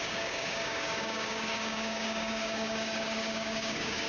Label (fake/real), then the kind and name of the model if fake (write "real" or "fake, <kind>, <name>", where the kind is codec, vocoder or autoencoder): fake, codec, DAC